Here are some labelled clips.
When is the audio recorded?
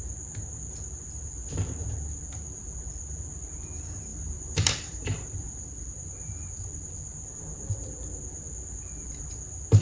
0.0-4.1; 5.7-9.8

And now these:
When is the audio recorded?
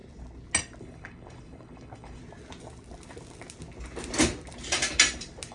0.0-0.8; 2.2-5.5